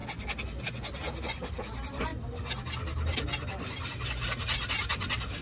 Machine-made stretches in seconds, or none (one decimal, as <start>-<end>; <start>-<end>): none